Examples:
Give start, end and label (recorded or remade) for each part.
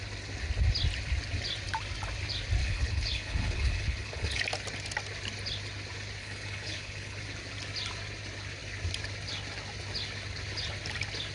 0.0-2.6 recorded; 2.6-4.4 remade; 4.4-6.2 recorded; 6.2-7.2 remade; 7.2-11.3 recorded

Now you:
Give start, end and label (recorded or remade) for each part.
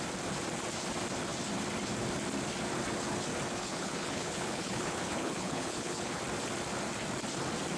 0.0-3.6 recorded; 3.6-6.2 remade; 6.2-7.8 recorded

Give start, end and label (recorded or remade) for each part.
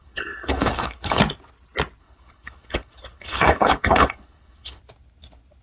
0.0-1.2 remade; 1.2-2.0 recorded; 2.0-4.8 remade; 4.8-5.6 recorded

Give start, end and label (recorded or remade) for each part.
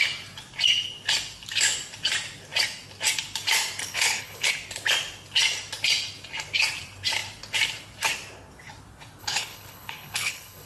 0.0-3.8 recorded; 3.8-4.5 remade; 4.5-9.2 recorded; 9.2-10.7 remade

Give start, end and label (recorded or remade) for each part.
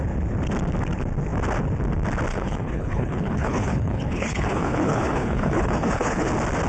0.0-2.3 recorded; 2.3-6.3 remade; 6.3-6.7 recorded